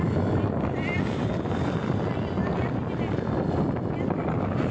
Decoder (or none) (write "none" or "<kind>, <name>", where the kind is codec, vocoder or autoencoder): none